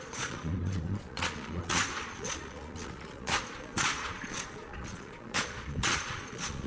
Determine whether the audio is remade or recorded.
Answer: remade